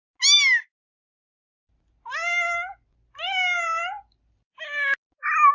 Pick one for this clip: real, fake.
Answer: real